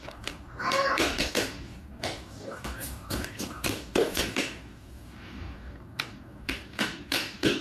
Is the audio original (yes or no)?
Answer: no